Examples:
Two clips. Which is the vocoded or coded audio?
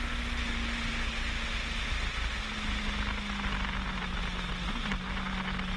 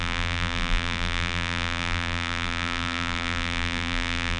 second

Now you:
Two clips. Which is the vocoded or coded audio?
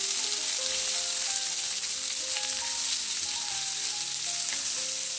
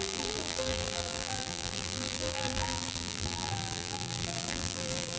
second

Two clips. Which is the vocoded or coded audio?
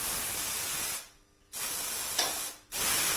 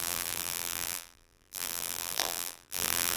second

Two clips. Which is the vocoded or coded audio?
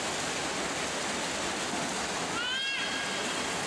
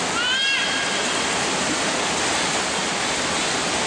second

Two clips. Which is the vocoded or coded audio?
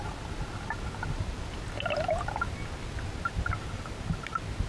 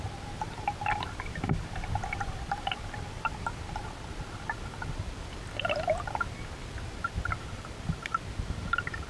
second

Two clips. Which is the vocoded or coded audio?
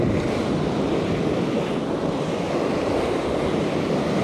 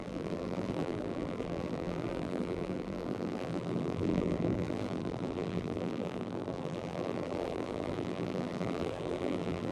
second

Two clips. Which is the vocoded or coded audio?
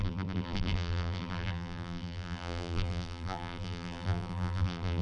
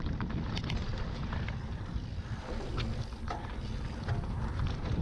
first